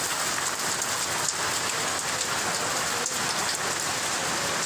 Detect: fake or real real